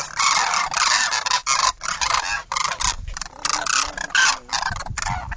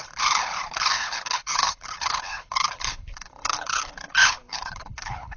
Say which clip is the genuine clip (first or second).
first